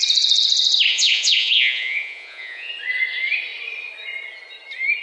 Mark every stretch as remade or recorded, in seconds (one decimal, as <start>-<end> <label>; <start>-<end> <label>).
0.0-0.9 recorded; 0.9-2.7 remade; 2.7-5.0 recorded